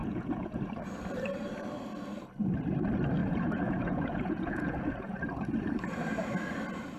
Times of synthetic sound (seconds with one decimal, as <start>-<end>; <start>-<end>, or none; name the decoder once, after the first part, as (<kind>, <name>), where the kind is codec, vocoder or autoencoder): 0.0-0.6 (vocoder, Vocos); 3.2-5.2